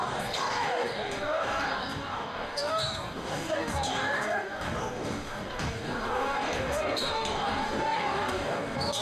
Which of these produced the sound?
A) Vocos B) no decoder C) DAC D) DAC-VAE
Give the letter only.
C